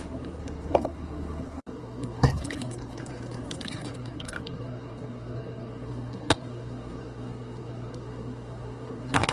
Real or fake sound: fake